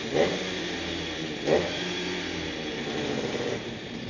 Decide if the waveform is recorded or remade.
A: remade